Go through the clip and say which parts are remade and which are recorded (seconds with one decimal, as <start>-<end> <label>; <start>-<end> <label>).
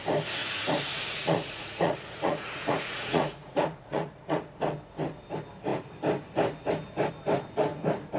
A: 0.0-0.4 recorded; 0.4-4.5 remade; 4.5-8.2 recorded